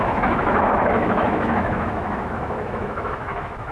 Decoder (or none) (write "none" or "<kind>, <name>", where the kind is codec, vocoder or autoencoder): autoencoder, DAC-VAE